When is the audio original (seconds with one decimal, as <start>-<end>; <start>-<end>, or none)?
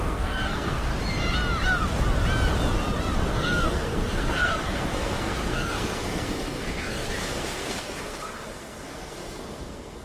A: 0.9-3.3